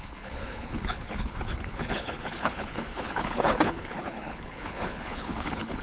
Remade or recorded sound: remade